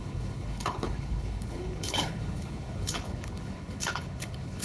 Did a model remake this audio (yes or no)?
yes